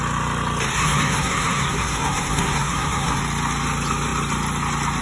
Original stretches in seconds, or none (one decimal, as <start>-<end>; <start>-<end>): 0.0-0.7; 3.2-5.0